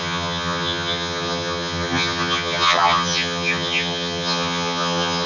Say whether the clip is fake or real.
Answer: fake